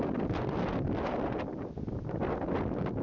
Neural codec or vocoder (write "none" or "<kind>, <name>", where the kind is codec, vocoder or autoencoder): none